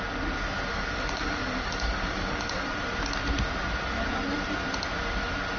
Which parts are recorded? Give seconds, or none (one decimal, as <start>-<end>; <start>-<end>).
0.0-0.7; 2.7-5.6